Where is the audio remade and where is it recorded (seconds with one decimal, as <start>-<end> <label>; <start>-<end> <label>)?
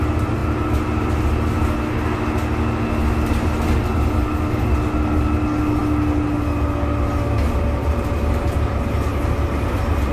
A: 0.0-10.1 recorded